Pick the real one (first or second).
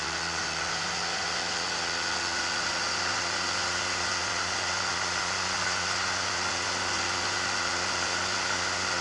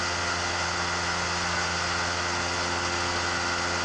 second